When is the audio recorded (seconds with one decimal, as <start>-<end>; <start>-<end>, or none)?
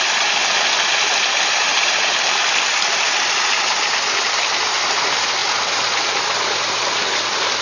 0.0-7.6